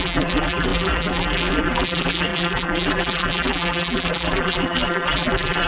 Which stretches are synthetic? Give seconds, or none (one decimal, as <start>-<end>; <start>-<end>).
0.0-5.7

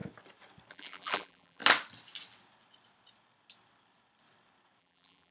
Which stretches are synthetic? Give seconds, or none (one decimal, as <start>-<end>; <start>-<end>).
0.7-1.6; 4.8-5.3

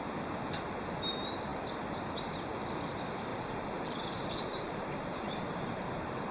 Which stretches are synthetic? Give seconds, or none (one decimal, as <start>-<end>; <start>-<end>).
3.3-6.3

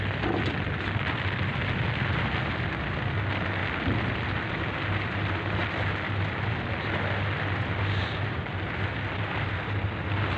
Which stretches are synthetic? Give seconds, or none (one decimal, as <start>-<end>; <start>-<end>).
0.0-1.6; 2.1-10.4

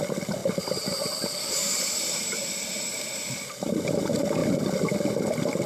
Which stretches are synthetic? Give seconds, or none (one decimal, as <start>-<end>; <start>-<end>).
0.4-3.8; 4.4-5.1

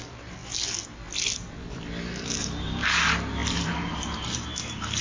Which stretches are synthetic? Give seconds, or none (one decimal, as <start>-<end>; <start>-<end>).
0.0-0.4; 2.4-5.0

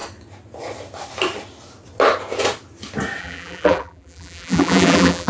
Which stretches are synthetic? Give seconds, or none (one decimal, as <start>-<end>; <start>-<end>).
3.2-5.3